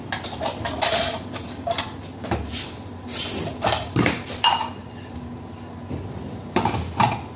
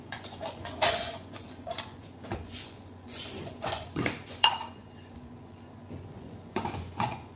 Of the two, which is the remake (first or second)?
second